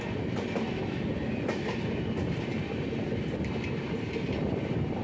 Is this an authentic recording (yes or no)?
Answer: yes